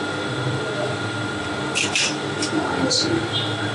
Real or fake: fake